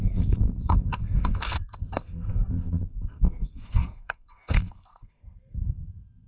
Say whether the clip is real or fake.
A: fake